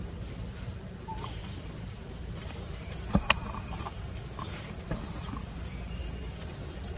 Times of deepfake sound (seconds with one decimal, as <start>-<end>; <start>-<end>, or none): 0.0-7.0